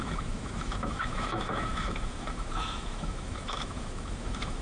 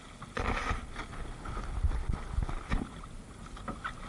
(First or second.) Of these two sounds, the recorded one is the second